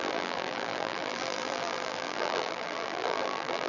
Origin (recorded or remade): remade